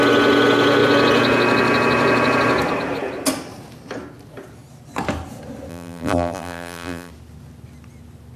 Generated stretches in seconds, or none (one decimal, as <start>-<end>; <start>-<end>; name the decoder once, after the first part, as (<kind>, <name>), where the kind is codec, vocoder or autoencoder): 5.7-7.1 (vocoder, BigVGAN v2)